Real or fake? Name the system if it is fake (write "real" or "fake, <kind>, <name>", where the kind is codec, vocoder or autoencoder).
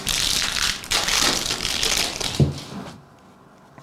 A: real